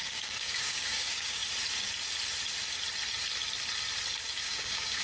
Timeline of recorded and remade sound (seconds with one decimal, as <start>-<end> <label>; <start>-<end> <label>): 0.0-1.4 remade; 1.4-4.4 recorded; 4.4-5.0 remade